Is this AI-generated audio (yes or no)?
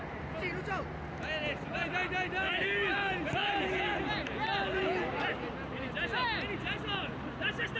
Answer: no